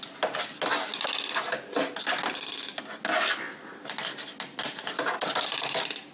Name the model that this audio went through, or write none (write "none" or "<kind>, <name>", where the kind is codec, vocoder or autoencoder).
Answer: none